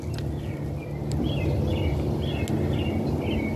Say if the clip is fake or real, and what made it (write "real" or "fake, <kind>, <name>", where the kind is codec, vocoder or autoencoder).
real